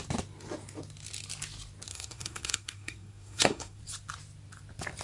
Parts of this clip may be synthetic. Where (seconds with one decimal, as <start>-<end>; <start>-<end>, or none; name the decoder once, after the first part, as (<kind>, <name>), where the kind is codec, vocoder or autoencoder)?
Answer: 1.9-3.8 (codec, SNAC)